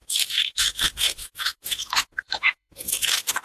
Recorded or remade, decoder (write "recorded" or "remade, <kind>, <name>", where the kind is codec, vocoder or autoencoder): remade, autoencoder, DAC-VAE